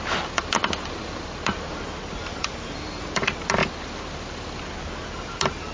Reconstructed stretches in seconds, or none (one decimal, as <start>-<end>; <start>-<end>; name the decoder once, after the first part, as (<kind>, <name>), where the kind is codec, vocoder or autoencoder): 2.2-3.1 (vocoder, BigVGAN v2)